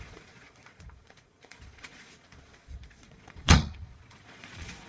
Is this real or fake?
fake